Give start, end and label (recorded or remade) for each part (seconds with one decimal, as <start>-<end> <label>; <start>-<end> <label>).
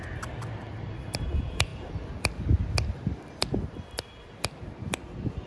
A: 0.0-5.5 recorded